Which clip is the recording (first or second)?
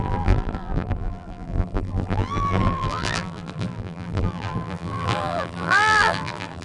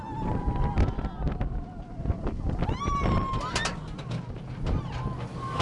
second